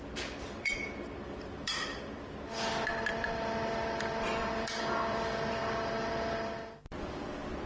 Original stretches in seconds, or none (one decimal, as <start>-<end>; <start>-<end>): none